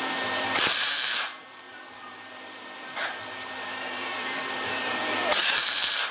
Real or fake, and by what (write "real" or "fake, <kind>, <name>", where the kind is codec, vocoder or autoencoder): fake, vocoder, BigVGAN v2